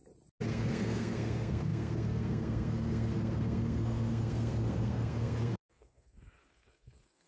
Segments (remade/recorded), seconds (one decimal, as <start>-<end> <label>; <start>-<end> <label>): 0.0-0.5 recorded; 0.5-7.3 remade